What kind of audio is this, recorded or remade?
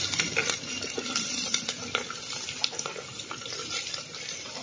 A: recorded